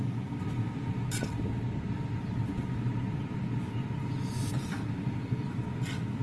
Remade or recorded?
recorded